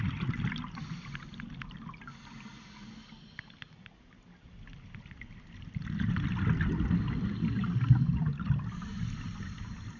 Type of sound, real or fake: real